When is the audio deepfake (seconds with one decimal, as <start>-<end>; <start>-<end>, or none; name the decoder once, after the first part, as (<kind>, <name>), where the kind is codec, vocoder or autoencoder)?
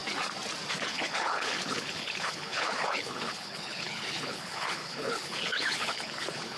0.7-6.6 (codec, HILCodec)